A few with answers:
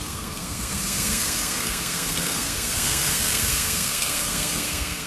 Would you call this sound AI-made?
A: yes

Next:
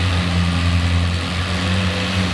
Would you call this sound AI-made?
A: no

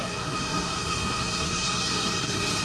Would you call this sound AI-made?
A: yes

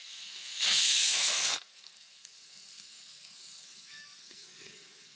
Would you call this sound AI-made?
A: yes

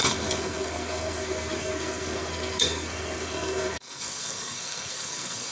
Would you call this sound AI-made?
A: yes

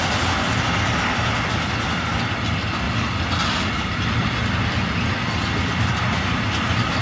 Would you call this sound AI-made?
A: no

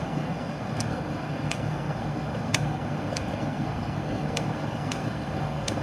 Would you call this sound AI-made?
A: yes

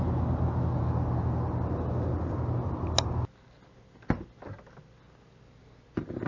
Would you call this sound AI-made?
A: no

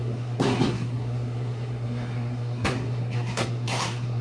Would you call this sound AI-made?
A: yes